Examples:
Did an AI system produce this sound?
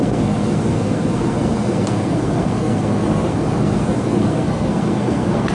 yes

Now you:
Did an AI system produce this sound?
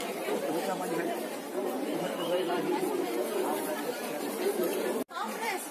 yes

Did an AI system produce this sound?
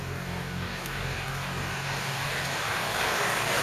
yes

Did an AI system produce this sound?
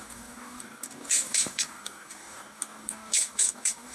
yes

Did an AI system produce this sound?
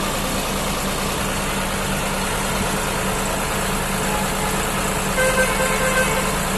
no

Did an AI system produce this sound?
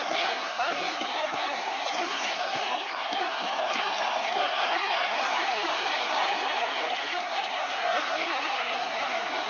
yes